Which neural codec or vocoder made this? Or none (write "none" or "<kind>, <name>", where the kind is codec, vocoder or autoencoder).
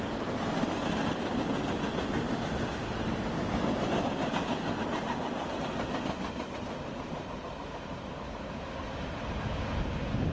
none